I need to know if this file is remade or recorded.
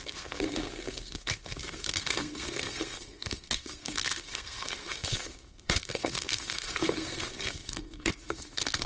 remade